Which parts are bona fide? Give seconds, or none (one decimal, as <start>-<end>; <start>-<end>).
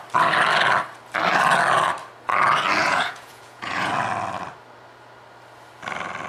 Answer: 0.0-2.8; 3.9-6.3